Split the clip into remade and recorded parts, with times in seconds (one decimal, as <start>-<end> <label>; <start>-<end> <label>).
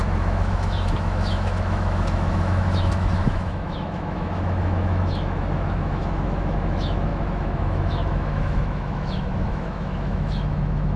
0.0-11.0 remade